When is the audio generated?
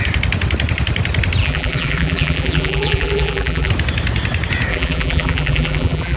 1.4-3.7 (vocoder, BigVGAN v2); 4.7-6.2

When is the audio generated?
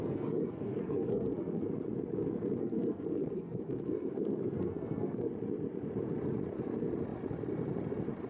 0.0-1.7 (codec, SNAC); 2.6-5.3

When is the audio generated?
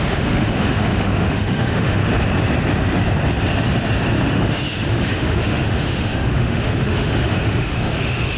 0.0-2.0 (autoencoder, DAC-VAE); 4.3-8.4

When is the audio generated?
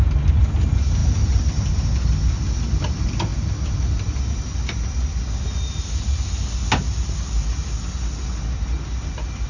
none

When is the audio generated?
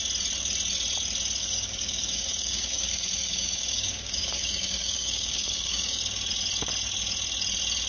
1.4-6.0 (codec, DAC)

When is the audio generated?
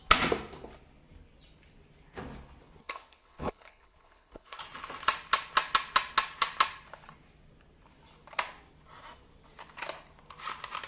2.8-4.6 (codec, HILCodec)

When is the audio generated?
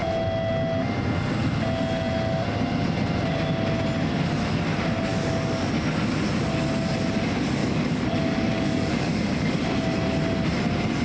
5.1-5.7 (codec, DAC); 7.6-9.6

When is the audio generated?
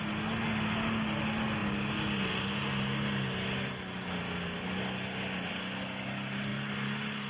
none